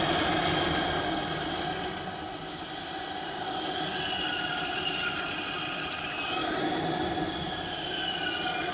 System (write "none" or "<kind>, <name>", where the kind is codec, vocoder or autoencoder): none